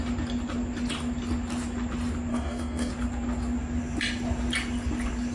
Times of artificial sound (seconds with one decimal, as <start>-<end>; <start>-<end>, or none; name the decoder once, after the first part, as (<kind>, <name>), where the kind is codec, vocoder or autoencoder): 2.3-2.9 (codec, DAC)